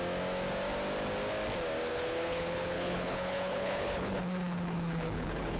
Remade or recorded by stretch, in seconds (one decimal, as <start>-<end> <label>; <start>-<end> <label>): 0.0-1.9 recorded; 1.9-5.6 remade